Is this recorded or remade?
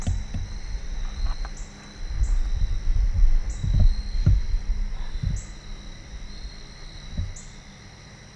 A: recorded